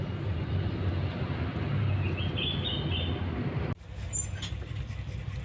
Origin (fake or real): real